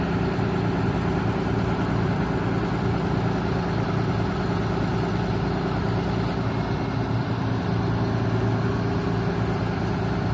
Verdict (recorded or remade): recorded